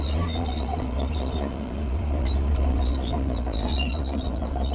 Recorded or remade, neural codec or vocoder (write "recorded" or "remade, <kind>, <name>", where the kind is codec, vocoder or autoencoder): remade, vocoder, Vocos